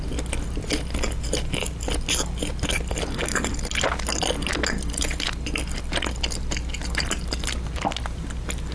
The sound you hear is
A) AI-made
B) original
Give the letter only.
B